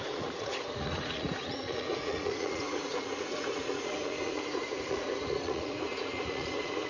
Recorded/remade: remade